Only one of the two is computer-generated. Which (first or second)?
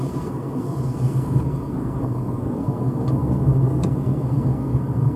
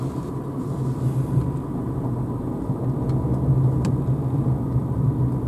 first